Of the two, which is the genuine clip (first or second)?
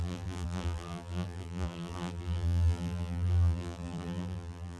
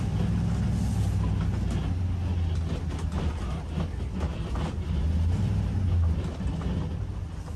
second